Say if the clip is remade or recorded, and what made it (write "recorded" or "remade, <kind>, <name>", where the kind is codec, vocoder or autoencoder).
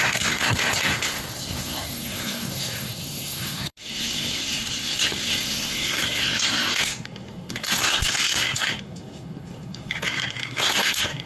remade, codec, SNAC